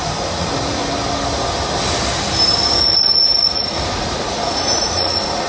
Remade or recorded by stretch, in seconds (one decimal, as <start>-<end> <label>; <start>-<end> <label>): 0.0-0.8 remade; 0.8-2.9 recorded; 2.9-5.5 remade